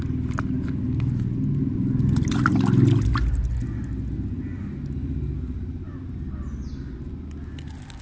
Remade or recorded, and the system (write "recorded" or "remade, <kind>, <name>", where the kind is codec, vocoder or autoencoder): recorded